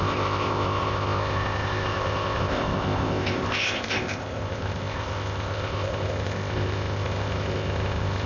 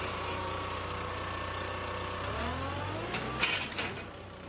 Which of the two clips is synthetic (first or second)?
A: first